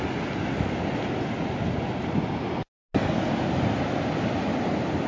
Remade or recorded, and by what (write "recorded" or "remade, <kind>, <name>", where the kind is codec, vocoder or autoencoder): recorded